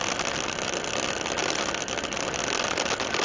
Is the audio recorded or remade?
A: recorded